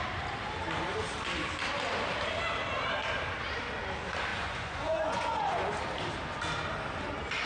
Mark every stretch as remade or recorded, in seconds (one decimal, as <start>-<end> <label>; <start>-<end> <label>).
0.0-4.3 recorded; 4.3-5.7 remade; 5.7-7.5 recorded